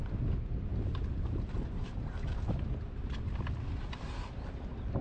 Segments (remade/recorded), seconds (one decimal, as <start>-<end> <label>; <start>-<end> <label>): 0.0-5.0 recorded